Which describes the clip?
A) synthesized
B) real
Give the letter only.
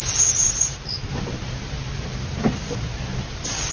B